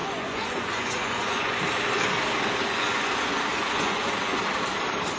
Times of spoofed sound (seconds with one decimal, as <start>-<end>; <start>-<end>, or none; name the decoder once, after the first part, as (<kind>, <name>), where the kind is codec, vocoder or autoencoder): 0.0-1.6 (vocoder, Vocos); 2.6-3.1; 3.5-4.4